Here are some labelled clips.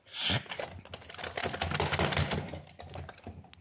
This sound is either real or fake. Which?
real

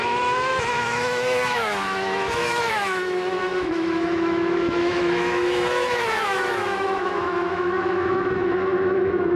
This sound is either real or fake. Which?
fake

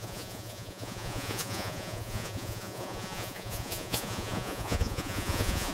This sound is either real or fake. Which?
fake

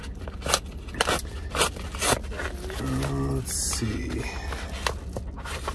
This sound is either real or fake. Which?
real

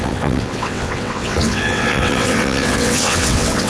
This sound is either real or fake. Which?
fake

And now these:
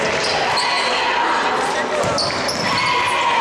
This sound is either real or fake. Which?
real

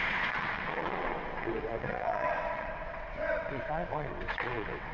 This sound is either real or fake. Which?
fake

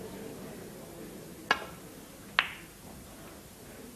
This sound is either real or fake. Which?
real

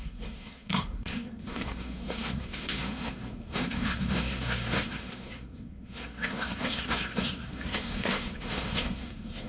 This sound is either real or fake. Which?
fake